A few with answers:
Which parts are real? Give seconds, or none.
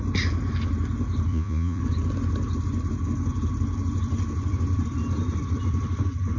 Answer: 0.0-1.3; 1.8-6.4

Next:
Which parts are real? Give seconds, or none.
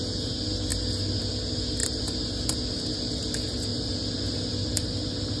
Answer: 0.0-3.7; 4.5-5.4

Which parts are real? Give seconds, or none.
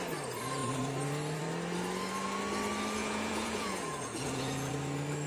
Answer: 0.0-3.0; 4.7-5.3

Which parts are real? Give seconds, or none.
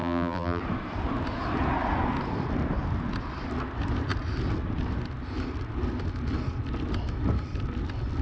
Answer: 0.6-8.2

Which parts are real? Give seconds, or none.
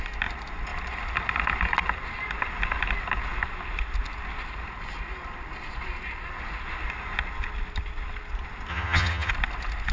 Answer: 0.0-8.7; 9.3-9.9